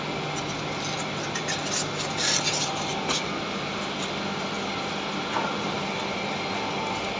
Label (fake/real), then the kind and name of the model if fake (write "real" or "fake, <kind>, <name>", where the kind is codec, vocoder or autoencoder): real